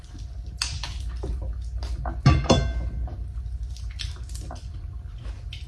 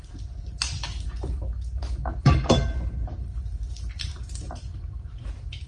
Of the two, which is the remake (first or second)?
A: second